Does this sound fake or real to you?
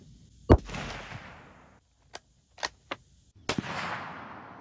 real